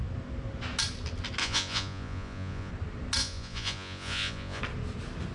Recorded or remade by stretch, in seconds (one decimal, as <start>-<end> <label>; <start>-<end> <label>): 0.0-1.4 recorded; 1.4-2.7 remade; 2.7-3.2 recorded; 3.2-4.6 remade; 4.6-5.3 recorded